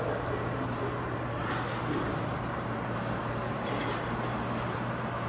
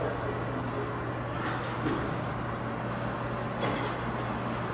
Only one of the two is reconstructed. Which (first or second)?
first